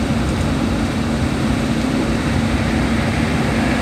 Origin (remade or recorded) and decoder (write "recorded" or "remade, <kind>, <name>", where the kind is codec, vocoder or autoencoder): recorded